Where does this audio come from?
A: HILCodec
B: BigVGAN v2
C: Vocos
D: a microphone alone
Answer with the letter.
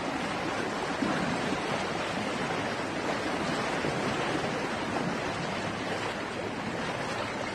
D